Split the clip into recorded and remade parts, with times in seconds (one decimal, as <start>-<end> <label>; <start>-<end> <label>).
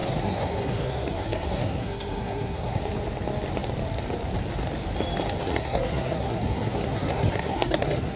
0.0-2.8 remade; 2.8-5.4 recorded; 5.4-8.2 remade